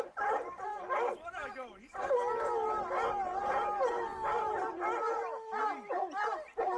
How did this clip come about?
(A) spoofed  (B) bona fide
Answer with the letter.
B